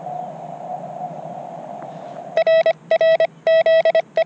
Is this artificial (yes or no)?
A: no